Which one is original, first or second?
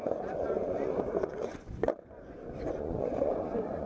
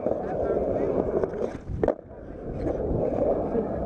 second